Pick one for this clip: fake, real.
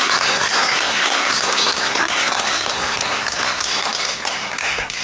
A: fake